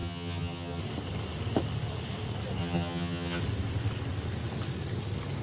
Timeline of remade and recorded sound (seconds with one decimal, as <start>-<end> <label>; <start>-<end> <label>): 0.0-0.8 remade; 0.8-2.6 recorded; 2.6-3.4 remade; 3.4-5.4 recorded